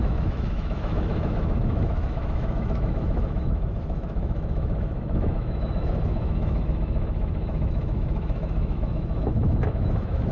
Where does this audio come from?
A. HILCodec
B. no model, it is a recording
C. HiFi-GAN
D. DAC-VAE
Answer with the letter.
D